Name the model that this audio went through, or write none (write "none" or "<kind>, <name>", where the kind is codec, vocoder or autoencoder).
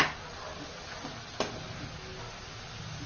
none